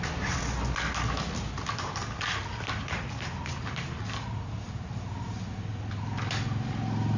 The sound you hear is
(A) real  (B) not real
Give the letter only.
A